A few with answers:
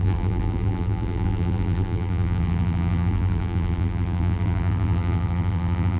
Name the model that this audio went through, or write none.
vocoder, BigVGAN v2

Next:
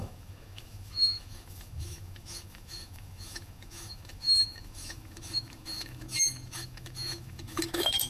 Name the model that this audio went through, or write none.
autoencoder, DAC-VAE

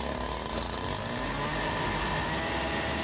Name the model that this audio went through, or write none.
none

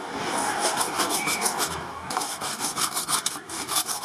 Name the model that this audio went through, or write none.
codec, DAC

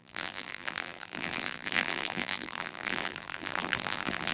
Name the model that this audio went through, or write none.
vocoder, BigVGAN v2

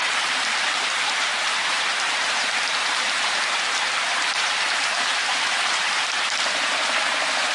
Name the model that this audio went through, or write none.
vocoder, BigVGAN v2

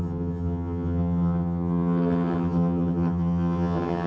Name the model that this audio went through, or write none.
vocoder, HiFi-GAN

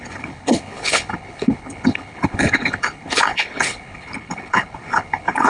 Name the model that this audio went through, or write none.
codec, HILCodec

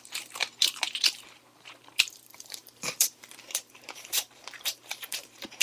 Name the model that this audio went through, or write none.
vocoder, BigVGAN v2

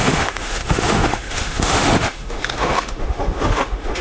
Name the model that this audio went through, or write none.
autoencoder, DAC-VAE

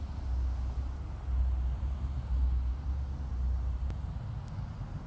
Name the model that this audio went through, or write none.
none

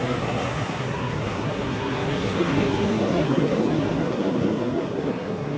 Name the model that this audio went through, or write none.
codec, SNAC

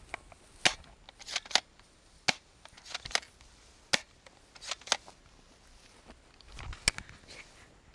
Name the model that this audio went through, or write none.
none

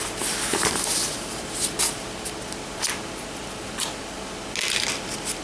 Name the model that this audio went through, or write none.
none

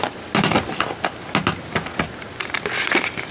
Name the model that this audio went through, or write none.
none